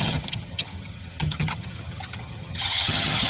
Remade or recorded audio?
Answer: remade